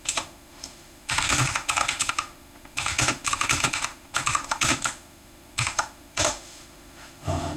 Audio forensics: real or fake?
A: fake